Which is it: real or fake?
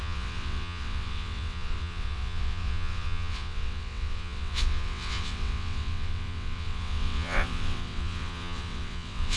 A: fake